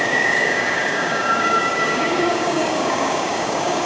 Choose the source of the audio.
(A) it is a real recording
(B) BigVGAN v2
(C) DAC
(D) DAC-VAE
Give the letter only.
C